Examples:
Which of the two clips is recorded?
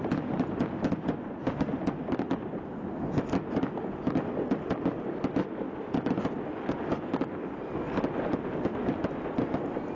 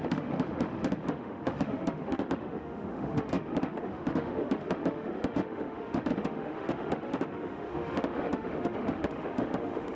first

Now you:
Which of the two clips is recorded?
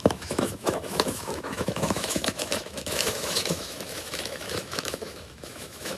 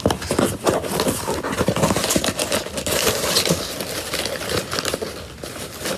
second